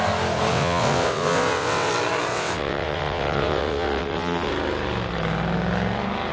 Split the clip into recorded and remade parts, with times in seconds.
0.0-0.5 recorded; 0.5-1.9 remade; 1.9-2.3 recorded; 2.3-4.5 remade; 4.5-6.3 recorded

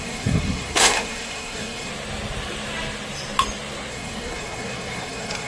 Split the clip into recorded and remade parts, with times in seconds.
0.0-1.9 remade; 1.9-3.9 recorded; 3.9-5.5 remade